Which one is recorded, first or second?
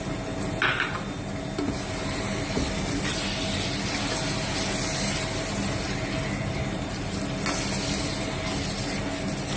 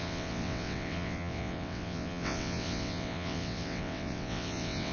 first